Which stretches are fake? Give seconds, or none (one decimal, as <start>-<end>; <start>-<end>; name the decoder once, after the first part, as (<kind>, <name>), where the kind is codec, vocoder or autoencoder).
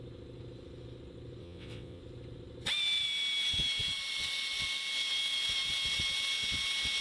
1.4-2.0 (vocoder, WaveNeXt)